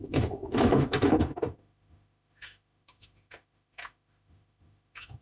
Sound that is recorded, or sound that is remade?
remade